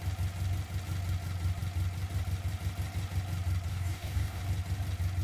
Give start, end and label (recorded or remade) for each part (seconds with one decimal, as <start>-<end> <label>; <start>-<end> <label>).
0.0-3.7 recorded; 3.7-4.4 remade; 4.4-5.2 recorded